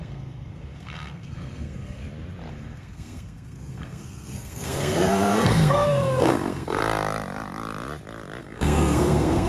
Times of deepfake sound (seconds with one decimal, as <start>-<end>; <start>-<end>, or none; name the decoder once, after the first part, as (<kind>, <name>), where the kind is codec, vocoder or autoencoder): 0.0-2.0 (codec, SNAC); 2.5-6.8; 8.4-9.5